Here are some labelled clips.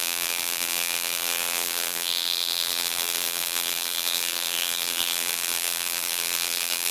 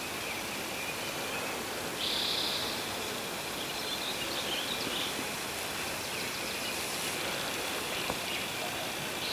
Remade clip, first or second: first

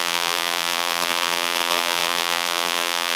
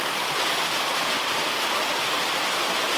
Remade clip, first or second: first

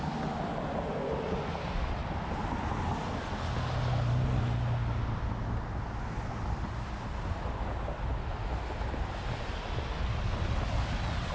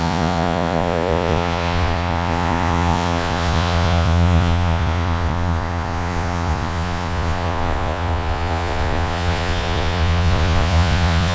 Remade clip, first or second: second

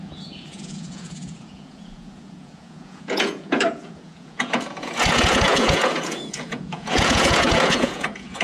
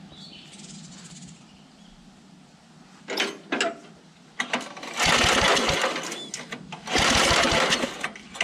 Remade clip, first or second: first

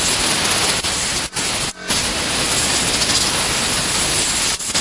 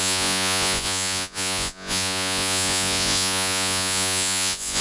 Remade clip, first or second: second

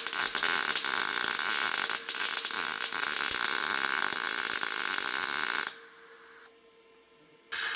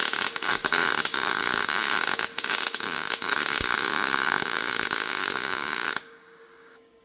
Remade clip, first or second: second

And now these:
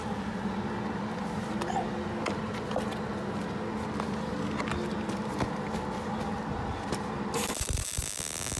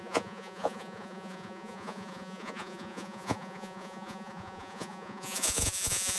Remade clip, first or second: second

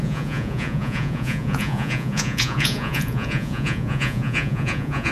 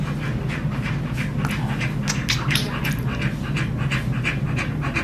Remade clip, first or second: first